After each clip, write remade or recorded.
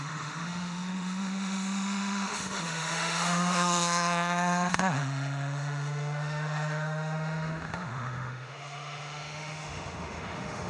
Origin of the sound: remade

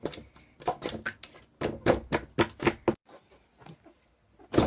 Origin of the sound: recorded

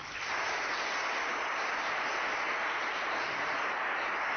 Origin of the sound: recorded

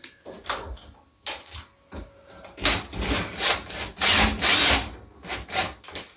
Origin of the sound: recorded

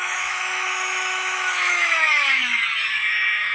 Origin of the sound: remade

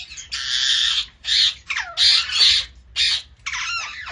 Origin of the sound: recorded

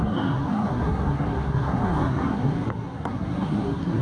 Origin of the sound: remade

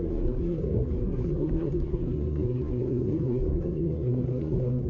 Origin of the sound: remade